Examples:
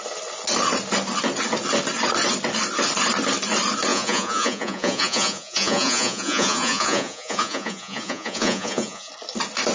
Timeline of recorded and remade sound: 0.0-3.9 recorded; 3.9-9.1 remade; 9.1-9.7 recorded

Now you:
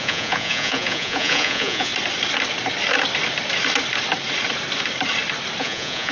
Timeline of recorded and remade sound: 0.0-1.9 remade; 1.9-5.6 recorded; 5.6-6.1 remade

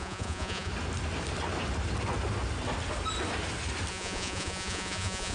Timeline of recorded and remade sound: 0.0-0.7 remade; 0.7-3.9 recorded; 3.9-5.3 remade

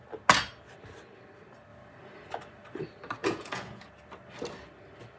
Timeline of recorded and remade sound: 0.0-3.2 recorded; 3.2-3.9 remade; 3.9-5.2 recorded

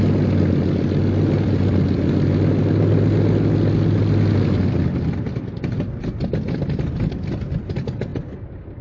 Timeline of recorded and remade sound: 0.0-8.8 recorded

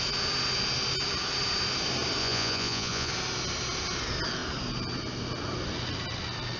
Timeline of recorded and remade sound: 0.0-2.2 recorded; 2.2-3.1 remade; 3.1-6.6 recorded

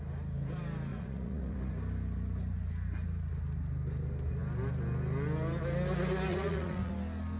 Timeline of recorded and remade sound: 0.0-0.9 recorded; 0.9-1.7 remade; 1.7-6.3 recorded; 6.3-6.9 remade; 6.9-7.4 recorded

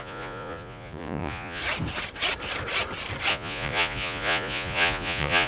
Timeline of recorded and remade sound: 0.0-1.6 remade; 1.6-3.3 recorded; 3.3-5.5 remade